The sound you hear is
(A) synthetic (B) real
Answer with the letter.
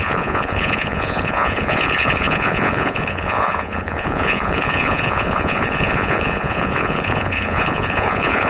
A